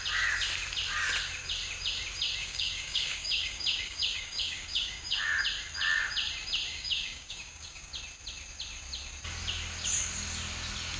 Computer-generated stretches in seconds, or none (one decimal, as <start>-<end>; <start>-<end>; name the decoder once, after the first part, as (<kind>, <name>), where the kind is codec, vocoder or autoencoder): 2.4-5.2 (codec, DAC); 6.7-7.9

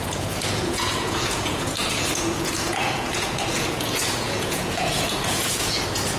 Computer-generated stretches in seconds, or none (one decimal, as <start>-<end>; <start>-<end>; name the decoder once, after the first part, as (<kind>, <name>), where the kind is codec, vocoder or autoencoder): 0.0-6.2 (vocoder, Vocos)

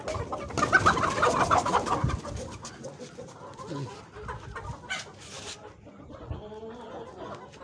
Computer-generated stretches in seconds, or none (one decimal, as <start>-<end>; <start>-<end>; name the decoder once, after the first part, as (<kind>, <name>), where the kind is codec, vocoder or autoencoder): none

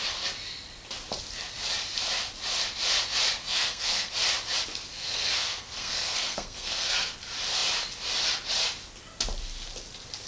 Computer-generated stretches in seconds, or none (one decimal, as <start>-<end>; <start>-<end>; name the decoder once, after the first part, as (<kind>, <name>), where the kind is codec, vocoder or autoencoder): 3.4-4.1 (codec, SNAC); 4.9-7.1

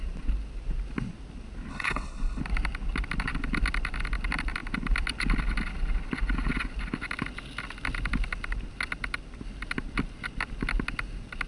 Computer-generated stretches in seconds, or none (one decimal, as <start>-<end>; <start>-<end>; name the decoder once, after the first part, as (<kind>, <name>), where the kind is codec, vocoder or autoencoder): 1.7-2.4 (codec, HILCodec)

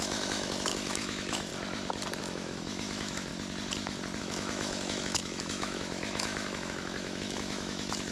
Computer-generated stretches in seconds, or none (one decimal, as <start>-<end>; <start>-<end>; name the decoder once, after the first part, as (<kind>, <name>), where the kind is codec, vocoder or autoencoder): 0.0-1.5 (autoencoder, DAC-VAE); 2.2-3.3; 4.2-8.1